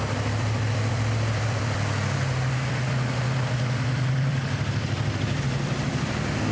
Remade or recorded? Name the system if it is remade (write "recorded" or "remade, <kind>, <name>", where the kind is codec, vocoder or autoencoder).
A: remade, vocoder, BigVGAN v2